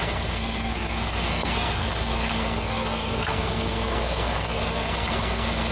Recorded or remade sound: remade